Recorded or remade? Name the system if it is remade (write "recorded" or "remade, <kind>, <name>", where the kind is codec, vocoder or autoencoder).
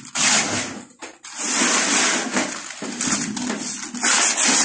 recorded